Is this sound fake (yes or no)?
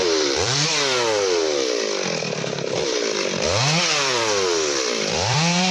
yes